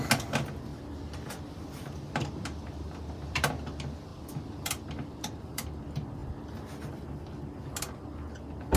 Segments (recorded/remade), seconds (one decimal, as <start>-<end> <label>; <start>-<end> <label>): 0.0-0.7 recorded; 0.7-3.5 remade; 3.5-4.1 recorded; 4.1-5.8 remade; 5.8-8.8 recorded